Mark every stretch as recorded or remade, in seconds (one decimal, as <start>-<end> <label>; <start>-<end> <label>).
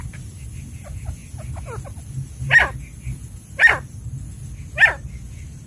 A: 0.0-5.7 recorded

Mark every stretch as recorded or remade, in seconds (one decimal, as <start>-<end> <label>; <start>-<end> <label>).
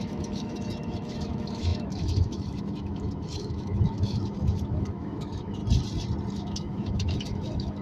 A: 0.0-5.6 remade; 5.6-6.3 recorded; 6.3-7.8 remade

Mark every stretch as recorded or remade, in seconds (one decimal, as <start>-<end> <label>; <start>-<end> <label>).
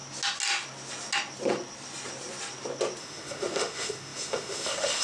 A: 0.0-3.0 recorded; 3.0-5.0 remade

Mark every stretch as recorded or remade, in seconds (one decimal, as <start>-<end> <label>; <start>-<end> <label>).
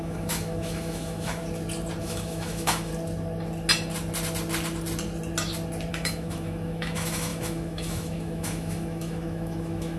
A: 0.0-1.4 remade; 1.4-2.0 recorded; 2.0-2.9 remade; 2.9-5.9 recorded; 5.9-10.0 remade